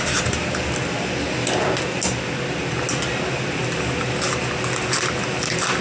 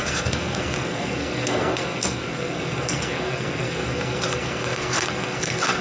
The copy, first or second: second